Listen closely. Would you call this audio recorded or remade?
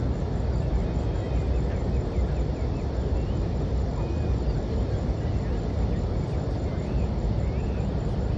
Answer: recorded